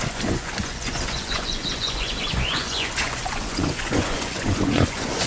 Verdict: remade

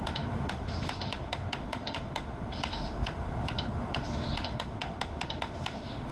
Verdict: remade